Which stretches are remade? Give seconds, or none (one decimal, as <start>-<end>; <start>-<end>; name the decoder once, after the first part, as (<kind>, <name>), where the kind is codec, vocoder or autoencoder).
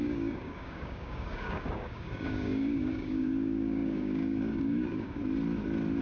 0.0-5.2 (codec, DAC)